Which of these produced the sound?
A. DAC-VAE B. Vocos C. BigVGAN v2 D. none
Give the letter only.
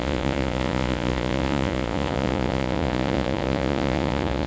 B